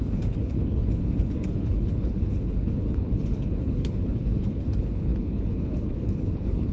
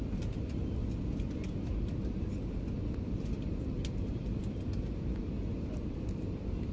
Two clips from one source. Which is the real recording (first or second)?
second